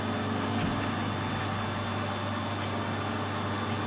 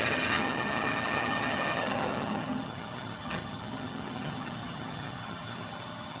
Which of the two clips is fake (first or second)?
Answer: second